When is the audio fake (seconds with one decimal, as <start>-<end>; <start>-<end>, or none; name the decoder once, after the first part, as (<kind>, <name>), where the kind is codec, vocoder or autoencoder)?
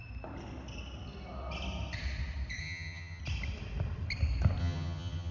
2.6-3.2 (vocoder, HiFi-GAN); 4.6-5.3